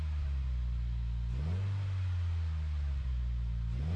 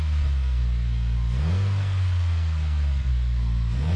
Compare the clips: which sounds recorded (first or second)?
first